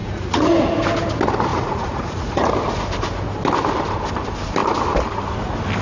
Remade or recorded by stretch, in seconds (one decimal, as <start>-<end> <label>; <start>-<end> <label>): 0.0-0.5 remade; 0.5-1.5 recorded; 1.5-2.5 remade; 2.5-5.8 recorded